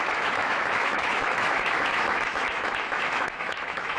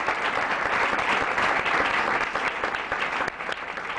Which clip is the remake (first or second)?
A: first